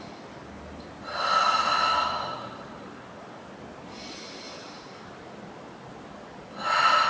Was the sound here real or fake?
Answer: real